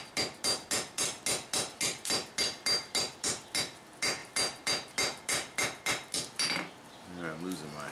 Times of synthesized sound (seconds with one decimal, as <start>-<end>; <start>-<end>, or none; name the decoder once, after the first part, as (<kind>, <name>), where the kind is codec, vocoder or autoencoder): none